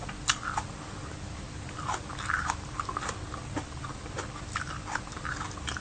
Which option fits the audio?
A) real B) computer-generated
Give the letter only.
A